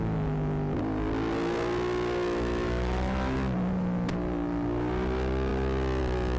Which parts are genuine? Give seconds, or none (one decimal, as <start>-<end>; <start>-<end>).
0.0-6.4